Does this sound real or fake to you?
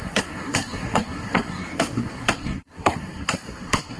fake